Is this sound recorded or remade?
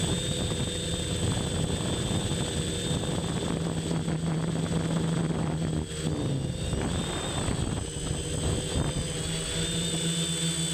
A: recorded